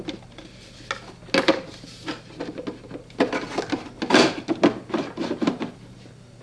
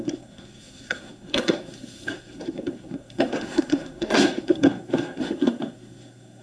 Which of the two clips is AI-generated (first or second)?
second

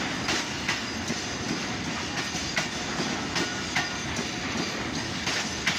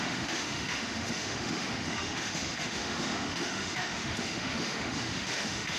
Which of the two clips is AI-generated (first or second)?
second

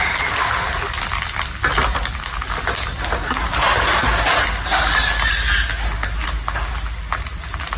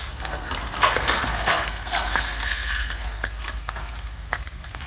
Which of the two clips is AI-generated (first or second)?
second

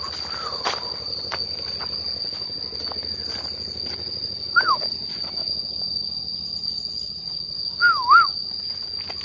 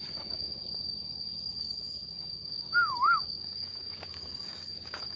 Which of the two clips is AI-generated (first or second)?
second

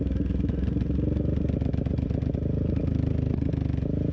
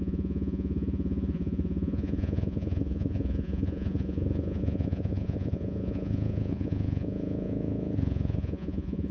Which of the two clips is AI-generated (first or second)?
second